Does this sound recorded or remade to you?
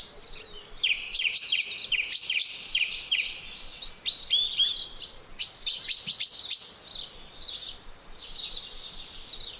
recorded